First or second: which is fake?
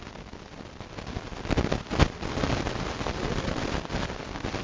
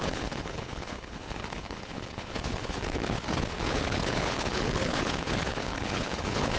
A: second